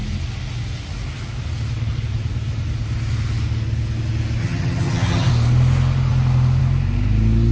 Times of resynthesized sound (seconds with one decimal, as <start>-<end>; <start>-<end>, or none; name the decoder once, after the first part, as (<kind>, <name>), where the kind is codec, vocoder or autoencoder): 4.4-5.3 (vocoder, HiFi-GAN)

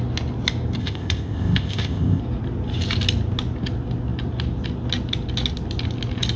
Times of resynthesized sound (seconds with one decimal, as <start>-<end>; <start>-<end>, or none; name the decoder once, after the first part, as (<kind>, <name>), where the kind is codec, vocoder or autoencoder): 0.8-2.2 (codec, ZipCodec)